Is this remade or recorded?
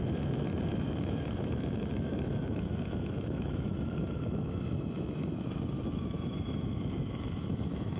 remade